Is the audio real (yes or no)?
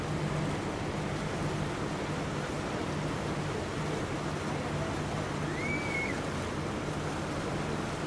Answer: yes